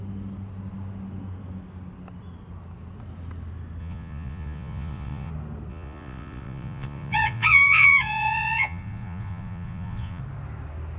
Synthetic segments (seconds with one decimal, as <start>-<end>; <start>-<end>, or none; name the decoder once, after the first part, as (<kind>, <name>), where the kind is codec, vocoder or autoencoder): 3.8-5.3 (vocoder, Vocos); 5.7-10.2